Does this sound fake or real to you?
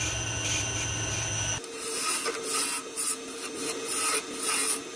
real